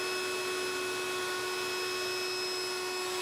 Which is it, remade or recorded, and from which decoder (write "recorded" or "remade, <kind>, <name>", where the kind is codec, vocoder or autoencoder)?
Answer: recorded